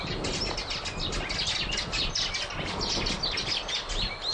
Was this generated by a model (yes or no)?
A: no